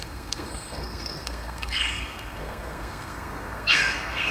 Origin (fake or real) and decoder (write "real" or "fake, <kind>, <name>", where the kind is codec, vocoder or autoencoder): fake, codec, SNAC